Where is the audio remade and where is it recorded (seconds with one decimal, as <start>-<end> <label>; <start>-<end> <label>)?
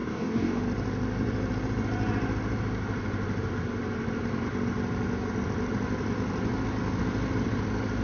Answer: 0.0-0.6 remade; 0.6-8.0 recorded